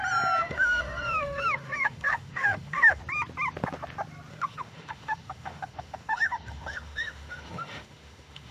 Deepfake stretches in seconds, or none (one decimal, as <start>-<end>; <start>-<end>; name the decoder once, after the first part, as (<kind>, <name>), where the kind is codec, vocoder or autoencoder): 0.4-3.0 (autoencoder, DAC-VAE); 4.3-8.5